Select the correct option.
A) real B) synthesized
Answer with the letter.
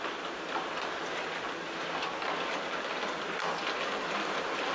A